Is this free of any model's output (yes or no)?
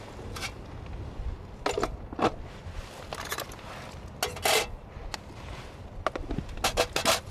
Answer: yes